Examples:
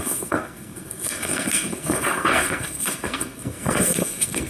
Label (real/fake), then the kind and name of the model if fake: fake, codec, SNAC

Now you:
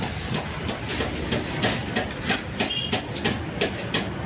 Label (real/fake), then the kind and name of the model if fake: real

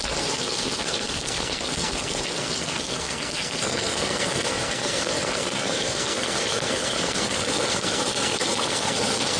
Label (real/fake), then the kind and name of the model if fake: fake, codec, SNAC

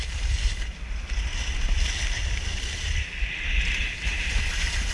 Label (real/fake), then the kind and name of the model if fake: real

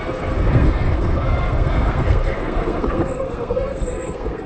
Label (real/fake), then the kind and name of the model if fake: fake, codec, SNAC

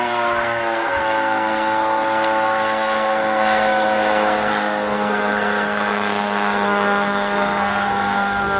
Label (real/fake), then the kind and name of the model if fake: fake, codec, SNAC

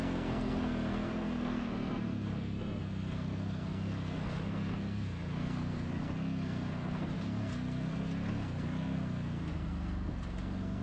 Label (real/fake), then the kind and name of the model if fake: fake, codec, SNAC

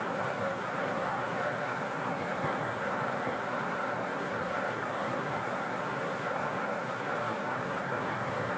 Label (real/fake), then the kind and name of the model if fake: fake, codec, SNAC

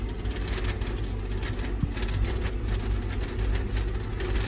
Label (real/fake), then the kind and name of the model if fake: real